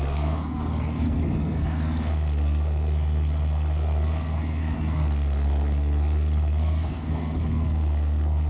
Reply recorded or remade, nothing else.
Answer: remade